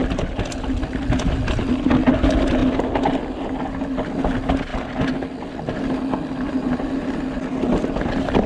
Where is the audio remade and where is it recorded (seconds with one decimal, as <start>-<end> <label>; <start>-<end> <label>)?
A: 0.0-8.5 recorded